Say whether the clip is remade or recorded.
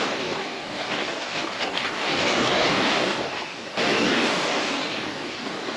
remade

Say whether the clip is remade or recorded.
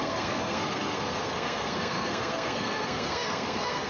remade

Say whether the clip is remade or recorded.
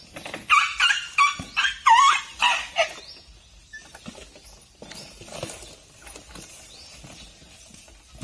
recorded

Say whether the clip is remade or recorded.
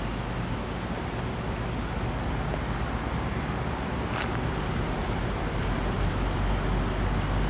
recorded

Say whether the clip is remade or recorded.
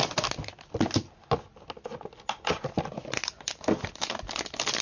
recorded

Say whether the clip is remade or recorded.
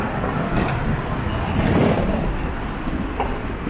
recorded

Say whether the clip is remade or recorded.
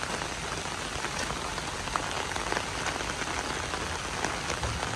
recorded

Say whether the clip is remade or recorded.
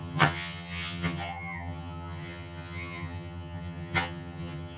remade